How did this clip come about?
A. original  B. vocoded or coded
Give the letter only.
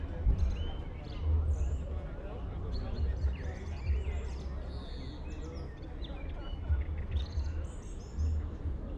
A